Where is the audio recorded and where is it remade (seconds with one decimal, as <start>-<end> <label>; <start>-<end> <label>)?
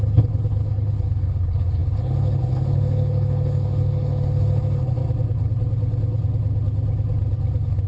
0.0-5.0 remade; 5.0-7.9 recorded